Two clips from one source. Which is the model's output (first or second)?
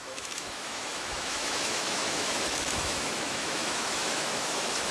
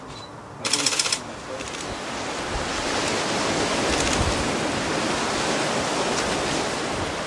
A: first